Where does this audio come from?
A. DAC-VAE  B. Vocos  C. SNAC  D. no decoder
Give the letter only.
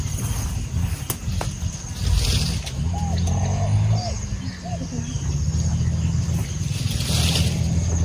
D